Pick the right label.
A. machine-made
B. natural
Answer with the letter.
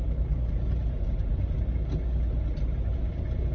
B